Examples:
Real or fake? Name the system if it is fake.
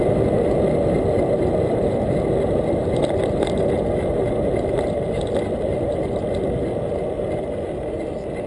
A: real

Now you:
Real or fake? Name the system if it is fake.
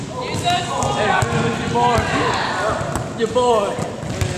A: real